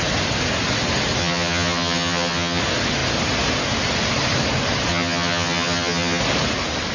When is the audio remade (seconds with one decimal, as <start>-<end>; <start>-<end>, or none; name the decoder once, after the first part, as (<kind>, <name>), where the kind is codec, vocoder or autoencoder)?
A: 1.2-2.6 (vocoder, HiFi-GAN); 4.9-6.2